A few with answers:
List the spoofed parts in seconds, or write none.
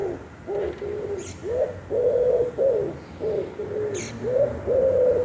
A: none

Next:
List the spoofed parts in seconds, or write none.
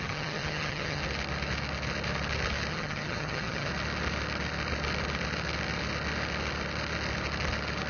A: 0.0-1.0 (vocoder, HiFi-GAN); 2.7-3.7